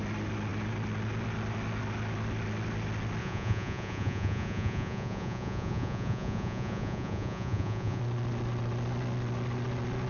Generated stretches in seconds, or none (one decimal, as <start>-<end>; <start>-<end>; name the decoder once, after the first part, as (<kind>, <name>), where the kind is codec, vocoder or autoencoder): 3.2-8.0 (vocoder, Vocos)

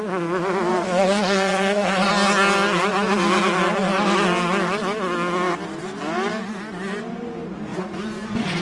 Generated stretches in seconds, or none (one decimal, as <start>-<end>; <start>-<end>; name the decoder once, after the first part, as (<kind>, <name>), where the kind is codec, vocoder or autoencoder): 0.7-2.1 (vocoder, Vocos); 7.7-8.6

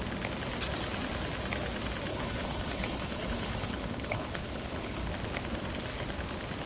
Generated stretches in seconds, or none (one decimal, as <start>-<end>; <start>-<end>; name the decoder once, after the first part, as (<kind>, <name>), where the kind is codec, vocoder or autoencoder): 2.1-5.1 (codec, HILCodec)